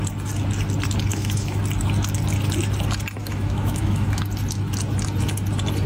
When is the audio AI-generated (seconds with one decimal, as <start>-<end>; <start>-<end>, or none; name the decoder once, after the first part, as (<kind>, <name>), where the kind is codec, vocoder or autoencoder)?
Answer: 1.1-1.6 (autoencoder, DAC-VAE); 3.2-4.2